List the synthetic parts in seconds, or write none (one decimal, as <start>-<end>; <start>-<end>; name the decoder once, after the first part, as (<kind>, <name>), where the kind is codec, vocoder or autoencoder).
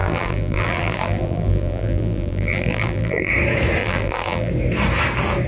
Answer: 0.0-3.3 (vocoder, BigVGAN v2); 3.8-4.5